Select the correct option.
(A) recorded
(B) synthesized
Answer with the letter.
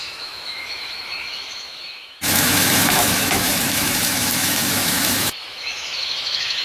B